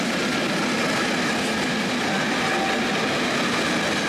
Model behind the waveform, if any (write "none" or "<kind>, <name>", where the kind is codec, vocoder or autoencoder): none